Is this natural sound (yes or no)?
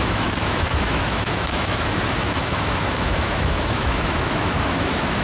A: no